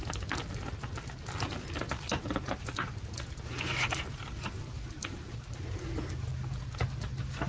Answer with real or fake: real